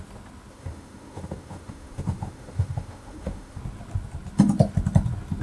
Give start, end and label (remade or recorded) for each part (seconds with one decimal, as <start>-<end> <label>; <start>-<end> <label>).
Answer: 0.0-0.5 recorded; 0.5-3.6 remade; 3.6-5.4 recorded